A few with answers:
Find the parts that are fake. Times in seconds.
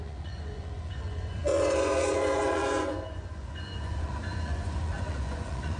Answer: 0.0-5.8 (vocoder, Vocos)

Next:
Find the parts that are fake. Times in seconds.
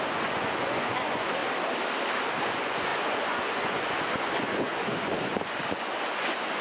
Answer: 0.0-1.4 (vocoder, Vocos); 2.4-6.6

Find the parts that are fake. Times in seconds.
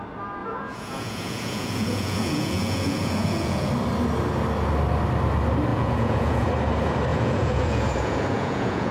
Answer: 0.4-3.7 (vocoder, Vocos); 5.7-6.5; 7.1-8.9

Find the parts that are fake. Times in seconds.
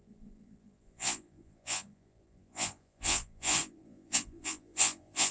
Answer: 0.0-5.3 (vocoder, Vocos)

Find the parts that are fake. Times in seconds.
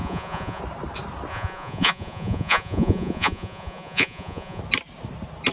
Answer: 0.0-0.6 (vocoder, Vocos); 1.3-4.6